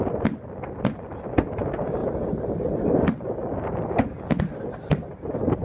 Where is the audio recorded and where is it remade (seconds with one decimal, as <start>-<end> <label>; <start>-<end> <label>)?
0.0-5.6 recorded